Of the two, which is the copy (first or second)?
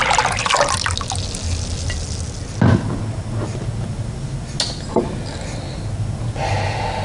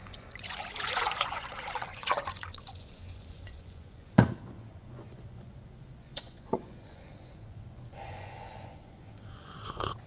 second